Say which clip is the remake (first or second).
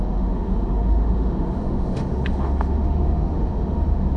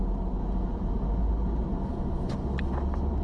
first